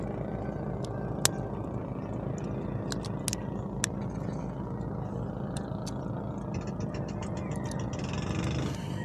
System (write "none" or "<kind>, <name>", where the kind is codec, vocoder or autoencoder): none